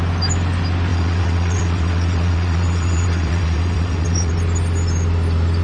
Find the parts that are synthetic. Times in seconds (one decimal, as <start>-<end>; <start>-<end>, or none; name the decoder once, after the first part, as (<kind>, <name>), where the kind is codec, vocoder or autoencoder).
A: 0.9-4.3 (vocoder, WaveNeXt)